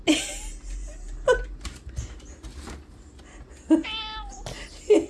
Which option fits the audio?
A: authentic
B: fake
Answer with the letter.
A